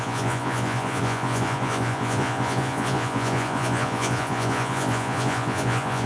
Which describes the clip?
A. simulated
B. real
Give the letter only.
A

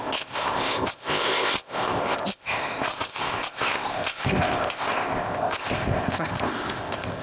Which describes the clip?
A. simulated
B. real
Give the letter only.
A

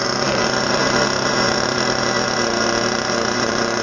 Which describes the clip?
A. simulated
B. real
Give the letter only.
A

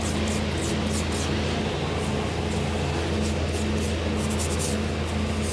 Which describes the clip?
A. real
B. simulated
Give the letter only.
A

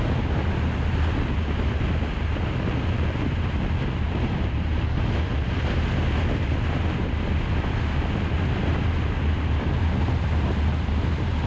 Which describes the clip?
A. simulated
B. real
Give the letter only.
B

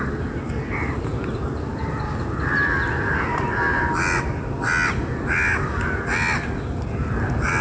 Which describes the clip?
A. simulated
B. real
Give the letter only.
B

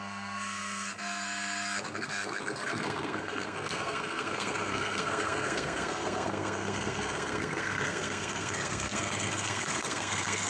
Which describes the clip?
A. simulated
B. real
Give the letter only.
A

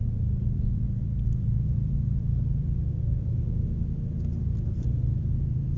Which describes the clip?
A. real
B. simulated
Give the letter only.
B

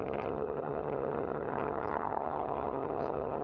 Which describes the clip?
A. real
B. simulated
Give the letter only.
B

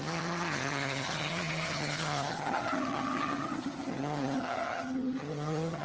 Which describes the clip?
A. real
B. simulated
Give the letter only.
B